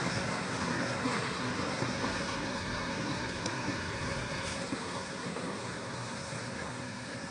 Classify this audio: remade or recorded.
remade